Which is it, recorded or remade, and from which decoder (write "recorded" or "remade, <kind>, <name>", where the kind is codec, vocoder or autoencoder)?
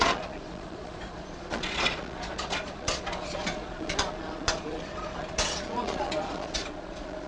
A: remade, vocoder, Vocos